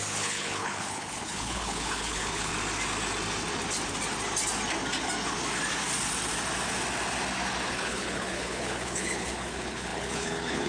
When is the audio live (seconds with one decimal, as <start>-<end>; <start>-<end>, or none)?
2.5-7.7

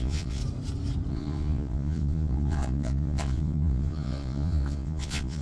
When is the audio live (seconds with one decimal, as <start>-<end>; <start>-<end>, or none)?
0.4-1.1

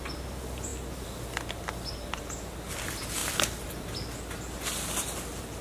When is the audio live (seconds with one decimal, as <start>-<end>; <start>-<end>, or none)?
0.0-3.2; 3.8-5.6

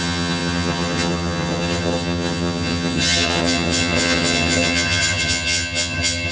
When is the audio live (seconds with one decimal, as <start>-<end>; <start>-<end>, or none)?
none

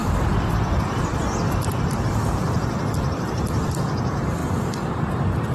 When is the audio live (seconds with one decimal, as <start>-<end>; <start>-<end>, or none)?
0.0-5.5

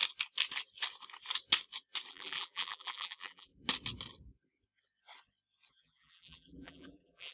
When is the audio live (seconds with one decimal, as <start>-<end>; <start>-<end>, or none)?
0.0-2.1; 3.5-5.7

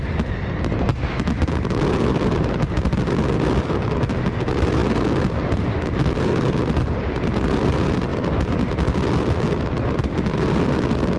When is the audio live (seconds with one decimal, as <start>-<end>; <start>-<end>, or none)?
0.0-8.1; 8.6-11.2